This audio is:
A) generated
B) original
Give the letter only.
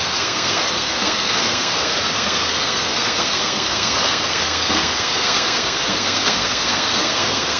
A